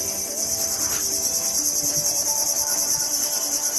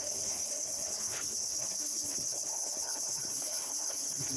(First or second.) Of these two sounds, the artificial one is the second